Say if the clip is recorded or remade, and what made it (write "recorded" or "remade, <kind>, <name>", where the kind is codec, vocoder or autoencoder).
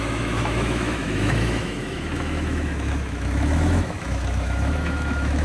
remade, autoencoder, DAC-VAE